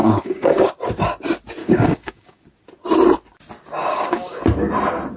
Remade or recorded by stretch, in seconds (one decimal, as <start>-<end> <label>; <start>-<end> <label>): 0.0-0.7 remade; 0.7-1.6 recorded; 1.6-2.4 remade; 2.4-3.9 recorded; 3.9-4.4 remade; 4.4-5.2 recorded